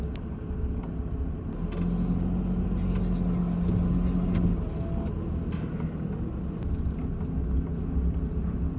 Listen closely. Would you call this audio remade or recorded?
recorded